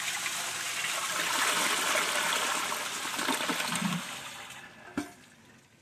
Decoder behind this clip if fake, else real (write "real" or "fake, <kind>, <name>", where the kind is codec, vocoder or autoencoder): real